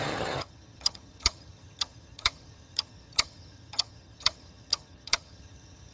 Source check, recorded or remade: remade